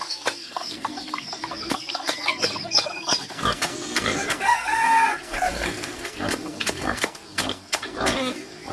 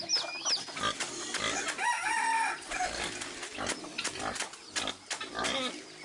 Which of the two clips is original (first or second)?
second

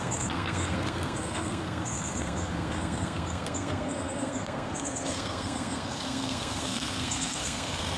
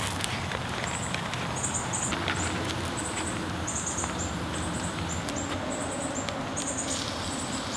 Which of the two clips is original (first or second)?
second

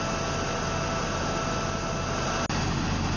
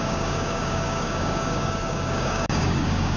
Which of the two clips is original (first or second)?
first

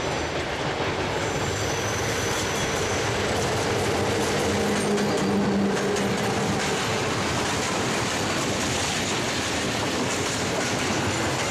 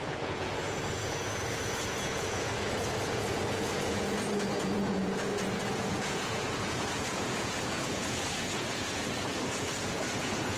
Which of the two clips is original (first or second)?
first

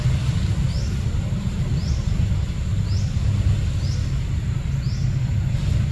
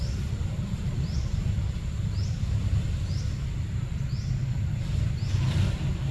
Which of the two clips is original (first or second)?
first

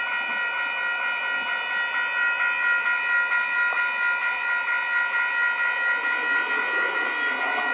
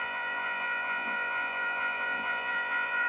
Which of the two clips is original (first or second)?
first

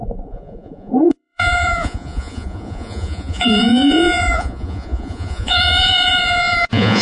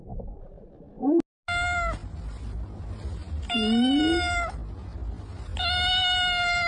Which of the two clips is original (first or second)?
second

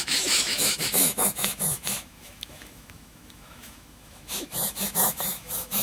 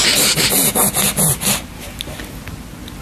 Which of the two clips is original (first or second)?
second